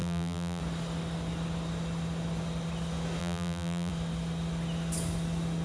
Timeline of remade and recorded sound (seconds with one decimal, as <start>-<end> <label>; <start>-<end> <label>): 0.0-0.6 remade; 0.6-3.2 recorded; 3.2-3.9 remade; 3.9-5.6 recorded